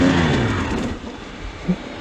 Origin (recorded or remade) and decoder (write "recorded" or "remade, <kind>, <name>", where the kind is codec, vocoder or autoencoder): recorded